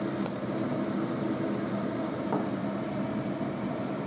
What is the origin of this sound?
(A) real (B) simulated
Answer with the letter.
A